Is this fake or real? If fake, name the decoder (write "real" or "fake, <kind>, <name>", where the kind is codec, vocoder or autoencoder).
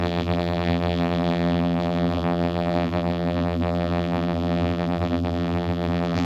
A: fake, vocoder, BigVGAN v2